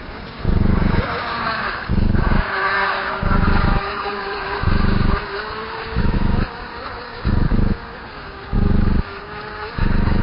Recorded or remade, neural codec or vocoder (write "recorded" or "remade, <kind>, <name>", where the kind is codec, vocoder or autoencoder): remade, codec, DAC